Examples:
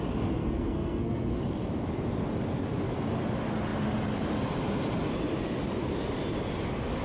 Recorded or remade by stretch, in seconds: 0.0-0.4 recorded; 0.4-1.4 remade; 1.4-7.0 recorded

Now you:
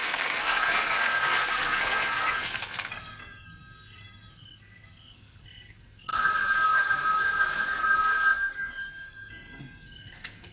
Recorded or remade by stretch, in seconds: 0.0-10.5 remade

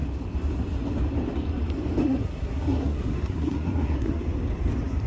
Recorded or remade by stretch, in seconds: 0.0-2.0 recorded; 2.0-4.2 remade; 4.2-5.1 recorded

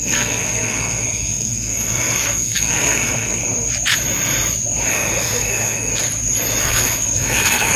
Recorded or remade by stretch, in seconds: 0.0-3.4 remade; 3.4-4.9 recorded; 4.9-5.9 remade; 5.9-6.6 recorded; 6.6-7.8 remade

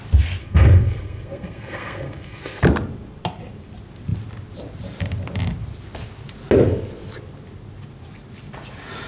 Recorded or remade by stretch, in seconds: 0.0-0.4 recorded; 0.4-2.6 remade; 2.6-9.1 recorded

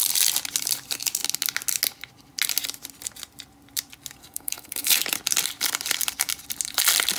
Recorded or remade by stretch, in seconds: 0.0-4.2 recorded; 4.2-5.0 remade; 5.0-7.2 recorded

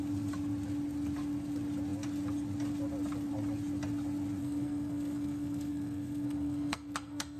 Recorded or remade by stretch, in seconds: 0.0-4.4 recorded; 4.4-7.4 remade